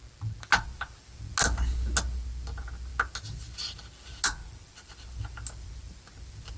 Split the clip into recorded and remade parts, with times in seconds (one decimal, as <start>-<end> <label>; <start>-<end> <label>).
0.0-6.6 recorded